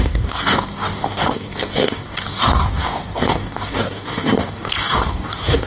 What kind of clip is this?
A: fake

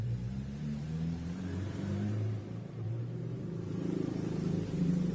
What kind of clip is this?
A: fake